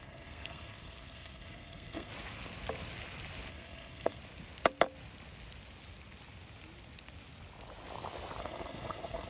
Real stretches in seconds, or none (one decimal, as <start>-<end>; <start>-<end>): 2.1-3.5; 4.2-8.4